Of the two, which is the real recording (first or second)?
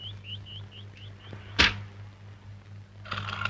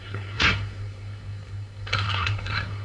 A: first